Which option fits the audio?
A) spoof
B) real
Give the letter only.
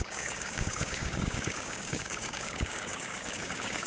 A